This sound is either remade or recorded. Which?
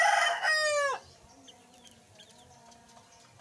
recorded